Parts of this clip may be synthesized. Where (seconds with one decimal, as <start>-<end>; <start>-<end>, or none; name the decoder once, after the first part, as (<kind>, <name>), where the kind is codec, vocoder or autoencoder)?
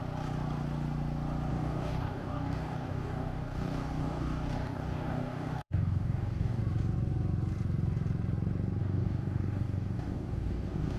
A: 1.5-6.6 (codec, DAC); 8.8-11.0